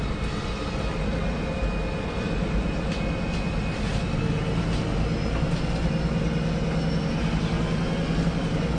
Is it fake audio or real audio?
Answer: real